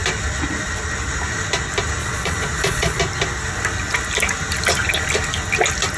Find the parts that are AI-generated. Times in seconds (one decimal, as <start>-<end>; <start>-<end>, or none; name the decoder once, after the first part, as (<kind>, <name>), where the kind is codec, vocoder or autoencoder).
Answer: 2.0-3.0 (vocoder, Vocos)